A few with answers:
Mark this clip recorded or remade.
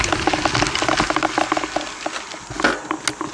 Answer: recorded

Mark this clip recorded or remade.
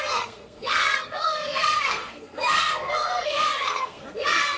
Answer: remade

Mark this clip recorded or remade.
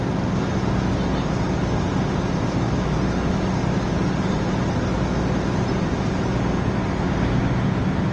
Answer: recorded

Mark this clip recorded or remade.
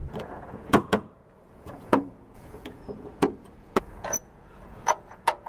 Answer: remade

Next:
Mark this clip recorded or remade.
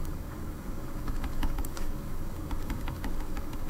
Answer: remade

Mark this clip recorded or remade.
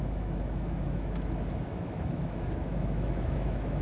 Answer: remade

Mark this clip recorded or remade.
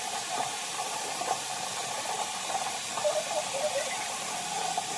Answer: recorded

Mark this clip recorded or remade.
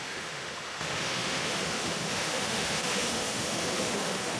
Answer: remade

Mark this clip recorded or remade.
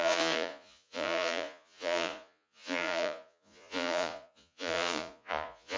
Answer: remade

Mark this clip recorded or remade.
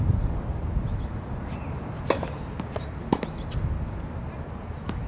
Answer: recorded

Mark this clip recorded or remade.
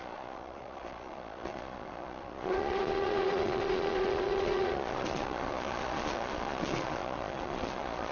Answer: remade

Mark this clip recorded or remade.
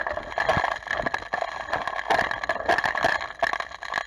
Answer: recorded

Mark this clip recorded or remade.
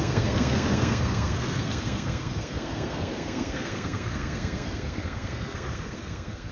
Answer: remade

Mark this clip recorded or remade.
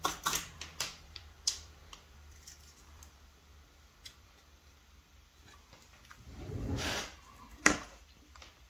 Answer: remade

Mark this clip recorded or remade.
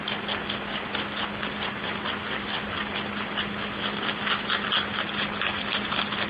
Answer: recorded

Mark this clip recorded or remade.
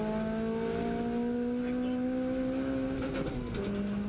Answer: recorded